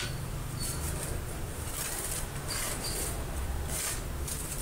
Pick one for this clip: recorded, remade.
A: remade